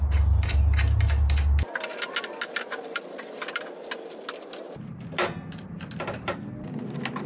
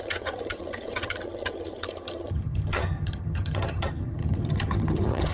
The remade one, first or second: second